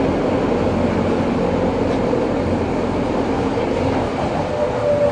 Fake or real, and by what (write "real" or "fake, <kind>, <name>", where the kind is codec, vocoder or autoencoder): real